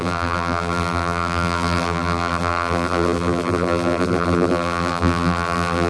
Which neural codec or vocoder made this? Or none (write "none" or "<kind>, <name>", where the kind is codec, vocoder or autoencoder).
vocoder, BigVGAN v2